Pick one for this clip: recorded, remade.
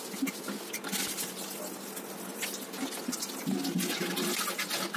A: recorded